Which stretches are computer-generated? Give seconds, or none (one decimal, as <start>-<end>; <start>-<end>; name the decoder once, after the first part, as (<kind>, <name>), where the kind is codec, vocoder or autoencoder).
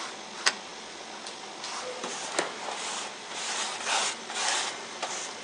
none